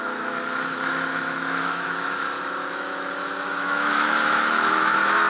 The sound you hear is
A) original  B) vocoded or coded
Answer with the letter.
B